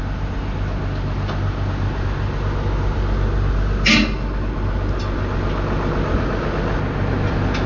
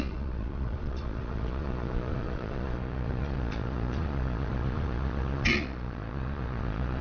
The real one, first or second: first